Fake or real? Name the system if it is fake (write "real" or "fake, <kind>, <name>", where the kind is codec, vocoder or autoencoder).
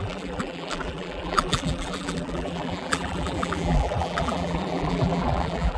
fake, vocoder, BigVGAN v2